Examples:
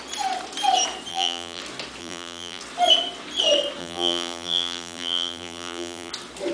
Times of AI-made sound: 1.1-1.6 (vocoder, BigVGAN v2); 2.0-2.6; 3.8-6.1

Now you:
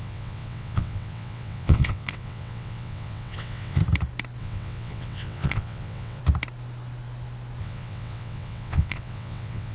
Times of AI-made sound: 0.0-3.8 (vocoder, WaveNeXt); 4.4-6.2; 7.6-9.7

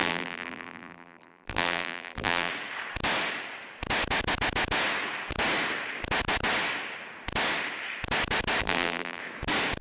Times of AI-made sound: 0.0-2.5 (vocoder, BigVGAN v2); 8.6-9.2